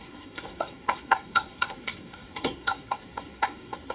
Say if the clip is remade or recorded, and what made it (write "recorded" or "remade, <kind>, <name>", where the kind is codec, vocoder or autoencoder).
remade, codec, SNAC